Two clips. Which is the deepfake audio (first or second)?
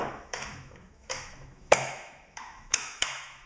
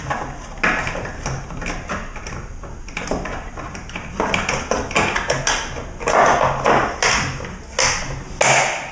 first